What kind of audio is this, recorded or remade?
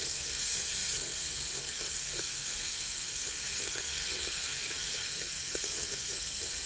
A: remade